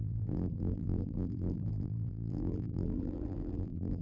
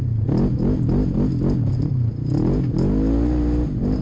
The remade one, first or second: first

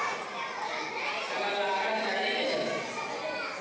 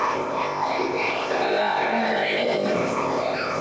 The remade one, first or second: second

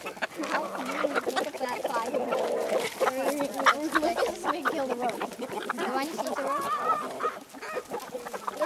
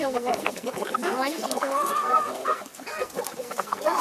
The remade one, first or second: second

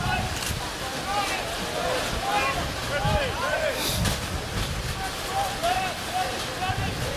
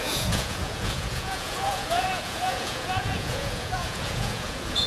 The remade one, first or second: second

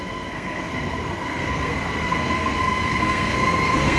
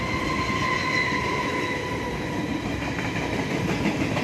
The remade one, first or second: first